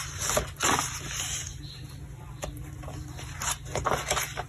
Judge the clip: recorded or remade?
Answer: recorded